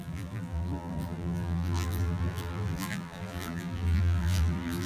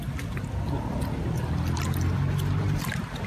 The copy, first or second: first